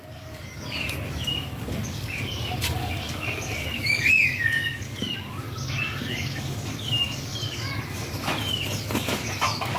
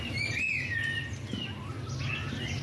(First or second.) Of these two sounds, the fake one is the first